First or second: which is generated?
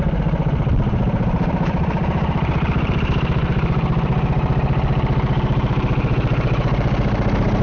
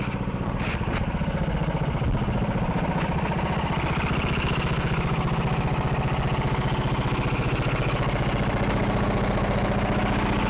first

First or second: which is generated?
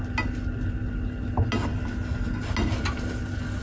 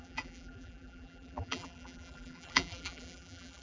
second